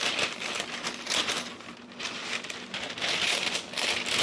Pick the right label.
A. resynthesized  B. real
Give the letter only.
B